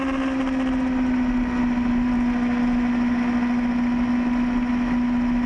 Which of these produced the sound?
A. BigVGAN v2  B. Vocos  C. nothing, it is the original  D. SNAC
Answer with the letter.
C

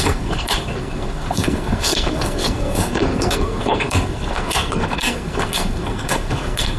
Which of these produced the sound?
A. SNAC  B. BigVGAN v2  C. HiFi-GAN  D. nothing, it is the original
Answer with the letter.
A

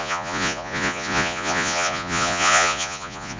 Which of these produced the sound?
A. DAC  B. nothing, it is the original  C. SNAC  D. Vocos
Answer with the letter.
D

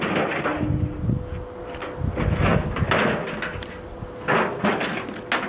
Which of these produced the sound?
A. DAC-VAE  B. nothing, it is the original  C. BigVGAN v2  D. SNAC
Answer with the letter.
B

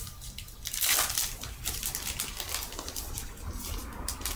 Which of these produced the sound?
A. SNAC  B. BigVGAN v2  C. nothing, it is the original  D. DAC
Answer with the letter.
C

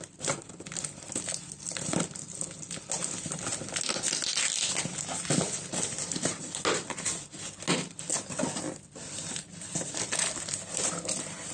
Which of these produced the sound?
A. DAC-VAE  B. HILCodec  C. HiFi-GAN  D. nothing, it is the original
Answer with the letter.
D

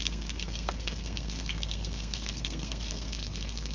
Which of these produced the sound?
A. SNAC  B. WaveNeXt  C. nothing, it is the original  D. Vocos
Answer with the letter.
A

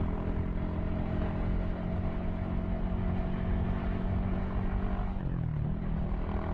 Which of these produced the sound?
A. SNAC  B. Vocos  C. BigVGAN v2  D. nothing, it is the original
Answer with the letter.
D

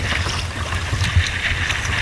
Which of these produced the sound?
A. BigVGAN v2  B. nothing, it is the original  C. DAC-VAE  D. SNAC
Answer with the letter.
B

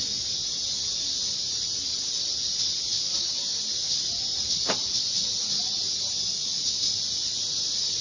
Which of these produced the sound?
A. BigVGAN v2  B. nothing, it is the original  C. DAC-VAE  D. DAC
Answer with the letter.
B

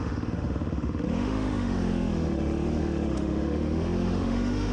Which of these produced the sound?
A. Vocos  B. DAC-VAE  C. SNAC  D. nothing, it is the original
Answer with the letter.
B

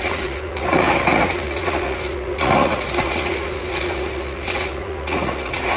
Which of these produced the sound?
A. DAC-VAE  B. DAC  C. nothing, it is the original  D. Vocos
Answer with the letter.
D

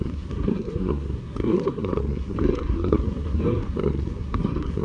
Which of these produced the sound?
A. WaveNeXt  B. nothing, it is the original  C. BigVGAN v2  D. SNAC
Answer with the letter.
D